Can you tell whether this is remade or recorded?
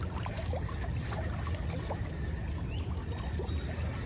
recorded